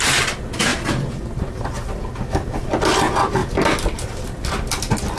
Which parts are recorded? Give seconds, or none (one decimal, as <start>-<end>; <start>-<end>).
0.0-5.2